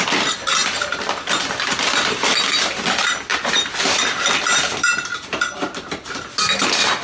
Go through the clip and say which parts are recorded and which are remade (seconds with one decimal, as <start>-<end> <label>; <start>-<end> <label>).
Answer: 0.0-3.3 recorded; 3.3-5.6 remade; 5.6-7.0 recorded